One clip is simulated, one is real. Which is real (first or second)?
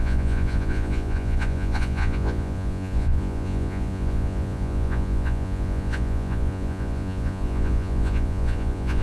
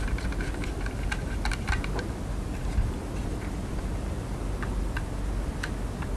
second